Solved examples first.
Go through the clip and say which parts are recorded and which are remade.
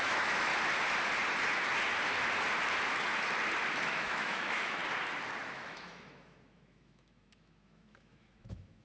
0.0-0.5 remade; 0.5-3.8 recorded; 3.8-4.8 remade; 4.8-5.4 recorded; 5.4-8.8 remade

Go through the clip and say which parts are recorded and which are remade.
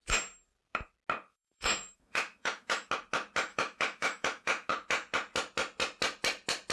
0.0-1.3 recorded; 1.3-2.9 remade; 2.9-3.5 recorded; 3.5-4.7 remade; 4.7-6.7 recorded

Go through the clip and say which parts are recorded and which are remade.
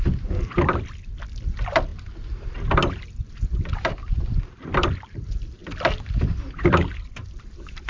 0.0-1.9 remade; 1.9-3.3 recorded; 3.3-5.6 remade; 5.6-6.1 recorded; 6.1-7.9 remade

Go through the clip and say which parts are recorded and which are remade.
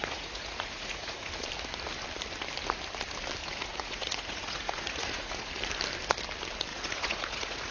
0.0-1.3 remade; 1.3-3.4 recorded; 3.4-5.5 remade; 5.5-6.7 recorded; 6.7-7.7 remade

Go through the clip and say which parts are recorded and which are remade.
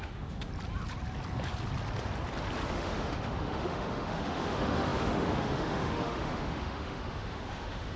0.0-0.5 remade; 0.5-2.7 recorded; 2.7-8.0 remade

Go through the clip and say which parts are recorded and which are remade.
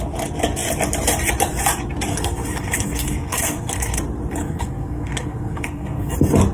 0.0-2.1 recorded; 2.1-4.0 remade; 4.0-4.4 recorded; 4.4-6.1 remade; 6.1-6.5 recorded